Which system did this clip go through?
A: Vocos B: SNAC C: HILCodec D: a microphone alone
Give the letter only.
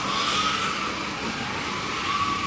D